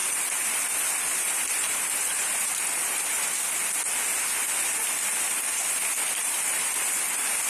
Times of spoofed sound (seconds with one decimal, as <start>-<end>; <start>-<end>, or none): 0.0-3.0; 6.2-7.1